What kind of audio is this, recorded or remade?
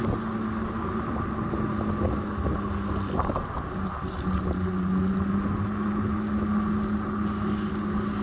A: recorded